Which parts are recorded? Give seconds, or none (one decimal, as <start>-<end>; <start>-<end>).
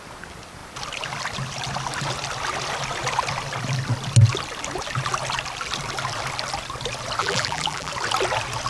0.0-7.2; 7.9-8.7